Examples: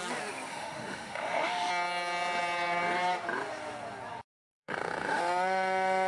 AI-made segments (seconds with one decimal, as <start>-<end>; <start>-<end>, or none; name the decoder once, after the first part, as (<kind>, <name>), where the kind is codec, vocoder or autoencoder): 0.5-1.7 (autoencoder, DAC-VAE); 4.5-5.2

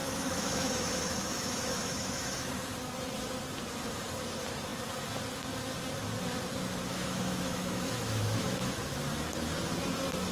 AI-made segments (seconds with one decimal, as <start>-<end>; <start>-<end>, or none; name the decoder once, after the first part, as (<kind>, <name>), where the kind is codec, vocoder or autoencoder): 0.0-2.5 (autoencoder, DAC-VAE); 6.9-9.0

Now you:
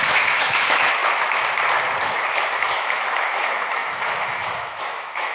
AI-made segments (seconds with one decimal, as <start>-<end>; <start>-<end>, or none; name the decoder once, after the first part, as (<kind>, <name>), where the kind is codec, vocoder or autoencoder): 0.0-1.0 (autoencoder, DAC-VAE); 2.6-5.3

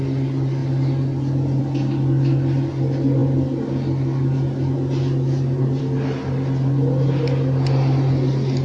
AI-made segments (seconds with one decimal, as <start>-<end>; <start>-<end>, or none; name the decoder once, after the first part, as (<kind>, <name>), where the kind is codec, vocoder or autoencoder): none

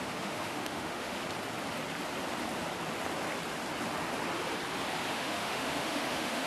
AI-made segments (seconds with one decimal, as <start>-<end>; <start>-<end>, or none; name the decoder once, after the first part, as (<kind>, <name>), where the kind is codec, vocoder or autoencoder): 0.0-1.2 (autoencoder, DAC-VAE); 5.1-6.5